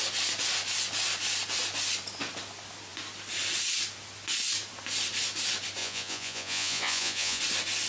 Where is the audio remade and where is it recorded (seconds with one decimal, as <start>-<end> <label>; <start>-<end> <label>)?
0.0-5.8 recorded; 5.8-7.4 remade; 7.4-7.9 recorded